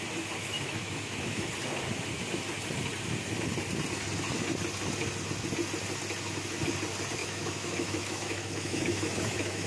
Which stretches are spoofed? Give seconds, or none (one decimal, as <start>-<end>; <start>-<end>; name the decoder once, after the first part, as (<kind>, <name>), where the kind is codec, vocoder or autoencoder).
0.4-1.5 (autoencoder, DAC-VAE); 7.2-9.7